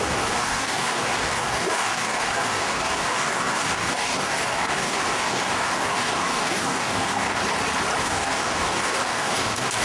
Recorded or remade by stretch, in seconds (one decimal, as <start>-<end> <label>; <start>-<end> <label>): 0.0-7.4 remade; 7.4-8.0 recorded; 8.0-9.8 remade